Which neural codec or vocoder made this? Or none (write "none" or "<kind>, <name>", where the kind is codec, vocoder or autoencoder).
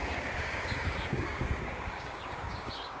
codec, DAC